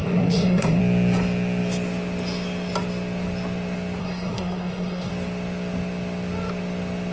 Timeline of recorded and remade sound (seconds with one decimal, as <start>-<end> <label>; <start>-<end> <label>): 0.0-0.8 remade; 0.8-4.0 recorded; 4.0-5.1 remade; 5.1-7.1 recorded